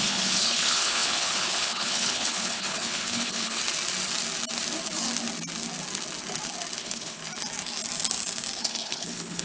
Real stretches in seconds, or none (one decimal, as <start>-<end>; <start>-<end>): 3.6-6.8; 7.2-8.6